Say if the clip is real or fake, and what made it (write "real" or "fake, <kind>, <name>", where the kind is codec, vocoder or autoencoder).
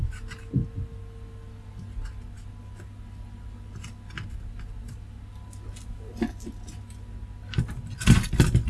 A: real